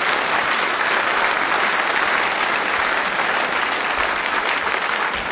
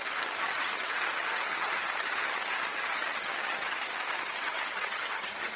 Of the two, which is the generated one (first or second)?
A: second